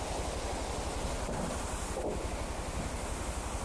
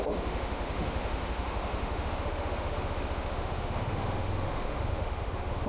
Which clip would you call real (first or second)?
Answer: first